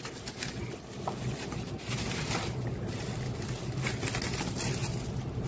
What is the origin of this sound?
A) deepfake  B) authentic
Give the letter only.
B